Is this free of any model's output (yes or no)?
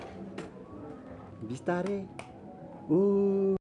yes